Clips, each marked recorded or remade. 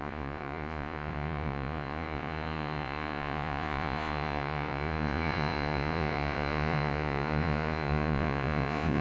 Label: remade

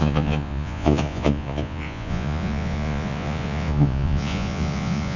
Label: remade